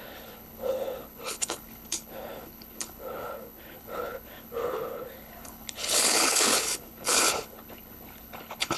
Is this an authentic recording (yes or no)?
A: no